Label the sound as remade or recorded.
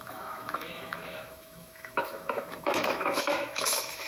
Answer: remade